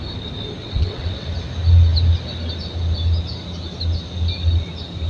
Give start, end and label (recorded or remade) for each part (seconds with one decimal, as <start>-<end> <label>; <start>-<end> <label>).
0.0-0.6 recorded; 0.6-1.3 remade; 1.3-5.1 recorded